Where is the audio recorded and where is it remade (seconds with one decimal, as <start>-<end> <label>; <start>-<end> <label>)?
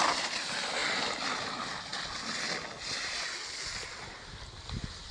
0.0-5.1 recorded